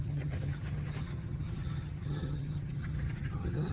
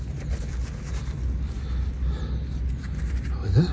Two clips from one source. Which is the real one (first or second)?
second